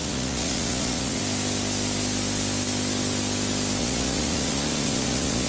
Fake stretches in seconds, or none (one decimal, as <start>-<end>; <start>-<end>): 0.0-1.2; 3.8-5.5